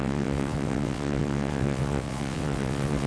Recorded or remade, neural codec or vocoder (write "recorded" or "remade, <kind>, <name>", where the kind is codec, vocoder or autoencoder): remade, vocoder, WaveNeXt